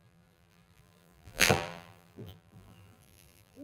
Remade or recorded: remade